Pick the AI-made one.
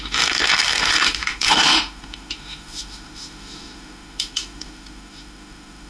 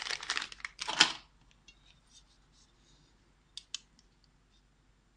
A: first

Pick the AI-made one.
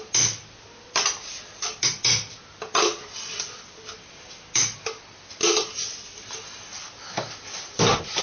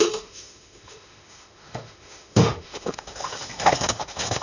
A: second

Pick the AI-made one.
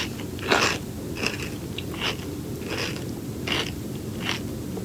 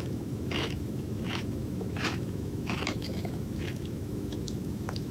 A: second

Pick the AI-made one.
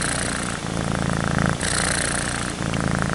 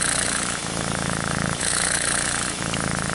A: second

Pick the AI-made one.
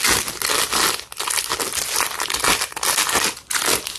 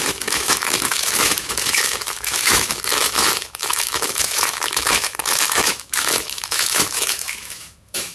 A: second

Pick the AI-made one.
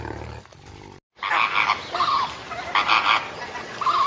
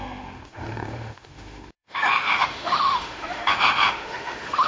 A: second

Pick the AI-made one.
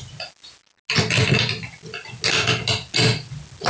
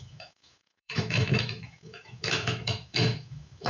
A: second